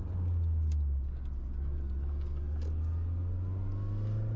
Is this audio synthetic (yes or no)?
no